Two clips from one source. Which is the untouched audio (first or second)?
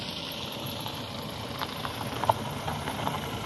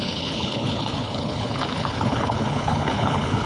first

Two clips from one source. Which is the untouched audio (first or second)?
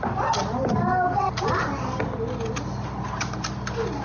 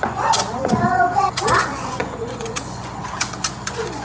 first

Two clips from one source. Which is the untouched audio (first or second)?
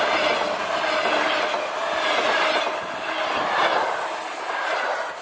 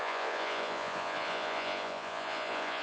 first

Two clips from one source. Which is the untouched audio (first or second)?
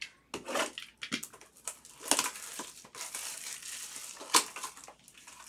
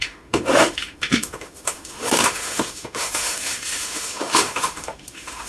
first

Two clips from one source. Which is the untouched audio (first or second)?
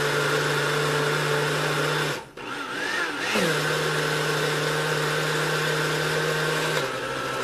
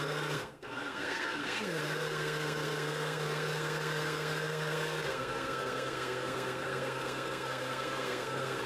first